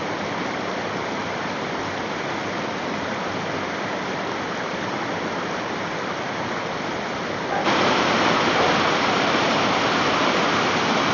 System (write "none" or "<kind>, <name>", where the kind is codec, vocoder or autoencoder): vocoder, BigVGAN v2